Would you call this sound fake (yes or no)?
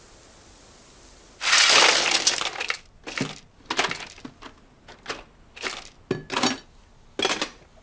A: no